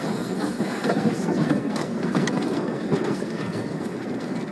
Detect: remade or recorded remade